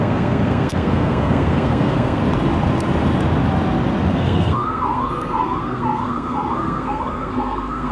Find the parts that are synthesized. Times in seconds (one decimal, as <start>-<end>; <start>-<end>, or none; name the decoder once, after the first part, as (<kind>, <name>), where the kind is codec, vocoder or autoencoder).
0.0-2.2 (codec, SNAC); 4.2-7.9